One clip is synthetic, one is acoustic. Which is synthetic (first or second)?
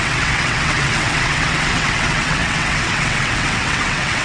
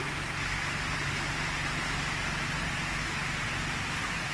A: first